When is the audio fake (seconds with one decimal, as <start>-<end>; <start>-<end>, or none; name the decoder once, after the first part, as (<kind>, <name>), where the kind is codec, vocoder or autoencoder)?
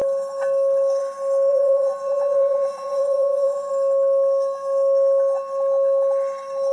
1.5-3.7 (vocoder, Vocos)